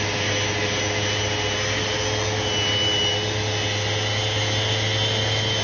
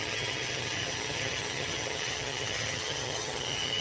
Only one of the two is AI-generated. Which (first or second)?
second